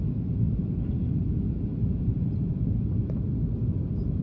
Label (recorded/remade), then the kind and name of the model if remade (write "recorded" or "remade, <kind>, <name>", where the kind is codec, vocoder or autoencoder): recorded